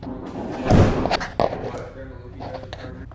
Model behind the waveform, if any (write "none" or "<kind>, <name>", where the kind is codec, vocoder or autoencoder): none